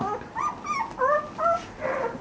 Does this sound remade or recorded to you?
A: recorded